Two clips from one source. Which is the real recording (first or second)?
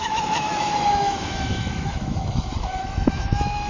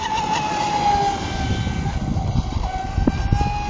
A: second